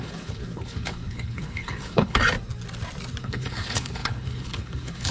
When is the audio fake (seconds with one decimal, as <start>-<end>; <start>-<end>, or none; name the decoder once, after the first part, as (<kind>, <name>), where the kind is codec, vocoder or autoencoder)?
0.0-2.2 (codec, HILCodec); 3.2-5.1